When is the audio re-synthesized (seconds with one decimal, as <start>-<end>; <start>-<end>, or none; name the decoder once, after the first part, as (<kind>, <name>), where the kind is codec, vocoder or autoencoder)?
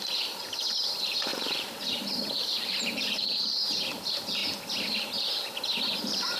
0.0-4.4 (vocoder, BigVGAN v2); 6.0-6.4